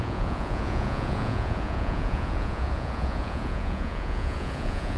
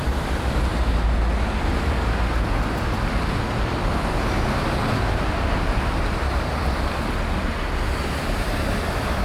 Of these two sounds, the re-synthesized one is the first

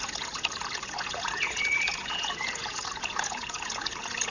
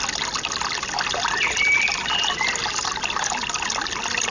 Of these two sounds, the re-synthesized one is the first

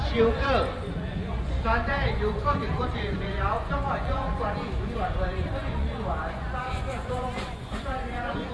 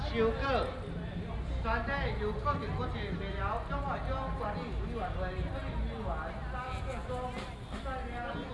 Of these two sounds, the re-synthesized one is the first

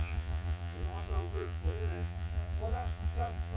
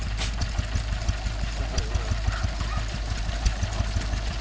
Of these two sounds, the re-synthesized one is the first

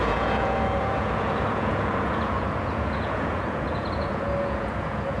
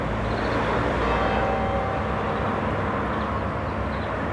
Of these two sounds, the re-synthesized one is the first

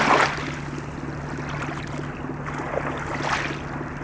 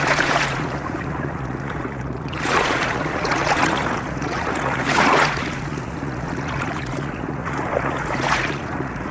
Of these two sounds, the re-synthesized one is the second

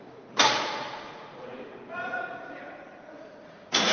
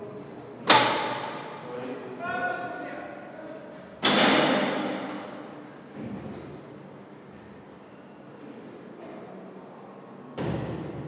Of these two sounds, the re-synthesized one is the first